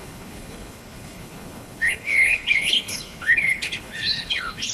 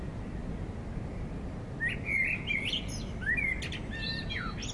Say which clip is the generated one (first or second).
first